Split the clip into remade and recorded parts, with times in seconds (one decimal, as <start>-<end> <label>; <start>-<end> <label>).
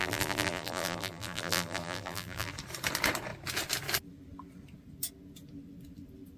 0.0-2.5 remade; 2.5-6.4 recorded